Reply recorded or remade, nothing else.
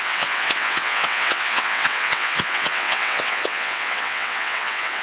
remade